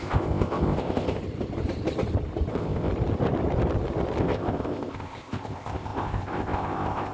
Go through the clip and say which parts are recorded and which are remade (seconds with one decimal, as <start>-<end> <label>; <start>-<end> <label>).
0.0-1.2 remade; 1.2-2.5 recorded; 2.5-2.9 remade; 2.9-4.2 recorded; 4.2-7.1 remade